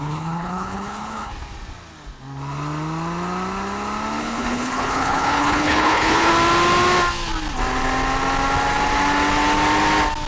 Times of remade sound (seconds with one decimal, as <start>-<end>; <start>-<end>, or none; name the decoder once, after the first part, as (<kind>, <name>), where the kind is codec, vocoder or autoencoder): 0.0-1.3 (codec, HILCodec); 4.2-6.3